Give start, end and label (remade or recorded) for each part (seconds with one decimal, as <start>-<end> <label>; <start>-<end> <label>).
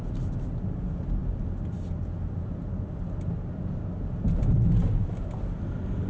0.0-6.1 recorded